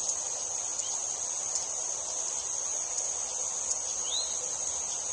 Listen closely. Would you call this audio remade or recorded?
recorded